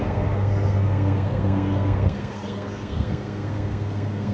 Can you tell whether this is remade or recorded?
remade